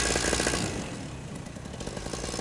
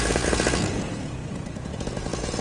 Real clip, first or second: first